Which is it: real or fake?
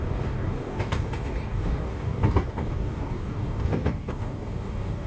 fake